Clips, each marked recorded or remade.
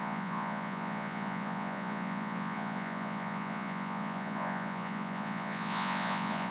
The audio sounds remade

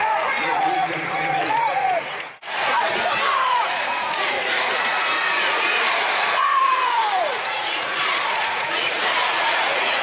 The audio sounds remade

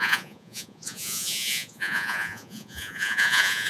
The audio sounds remade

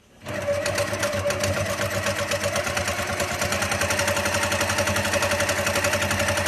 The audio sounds recorded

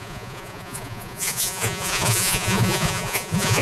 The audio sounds remade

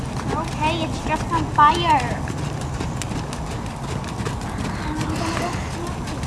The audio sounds recorded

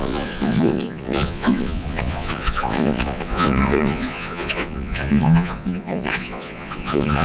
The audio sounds remade